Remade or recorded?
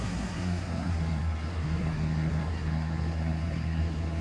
remade